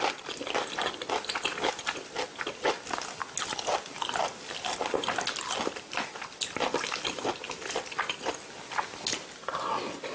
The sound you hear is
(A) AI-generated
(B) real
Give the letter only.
B